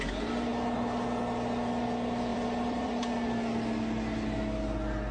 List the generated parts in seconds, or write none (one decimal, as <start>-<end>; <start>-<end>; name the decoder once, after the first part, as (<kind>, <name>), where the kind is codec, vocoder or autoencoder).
2.3-2.9 (vocoder, BigVGAN v2)